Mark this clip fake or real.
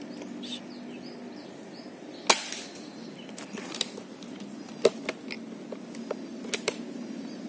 real